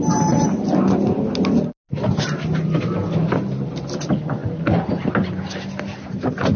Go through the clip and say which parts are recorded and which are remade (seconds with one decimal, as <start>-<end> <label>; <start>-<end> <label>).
0.0-6.6 recorded